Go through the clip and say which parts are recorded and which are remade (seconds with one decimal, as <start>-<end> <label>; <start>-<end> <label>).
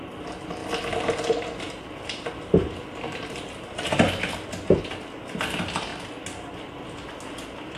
0.0-7.8 recorded